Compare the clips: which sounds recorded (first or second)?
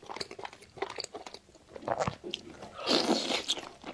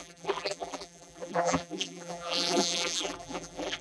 first